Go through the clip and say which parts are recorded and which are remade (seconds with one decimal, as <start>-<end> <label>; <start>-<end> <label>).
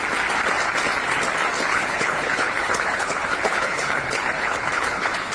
0.0-1.7 recorded; 1.7-5.3 remade